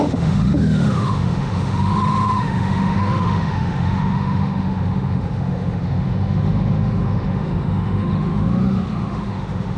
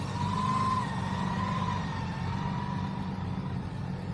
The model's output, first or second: first